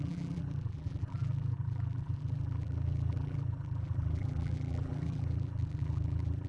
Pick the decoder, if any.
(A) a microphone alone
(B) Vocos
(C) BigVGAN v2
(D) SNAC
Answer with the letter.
C